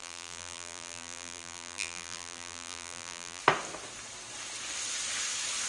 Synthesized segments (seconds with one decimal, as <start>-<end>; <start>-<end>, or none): 0.0-3.4